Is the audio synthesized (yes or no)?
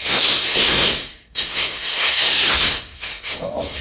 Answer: yes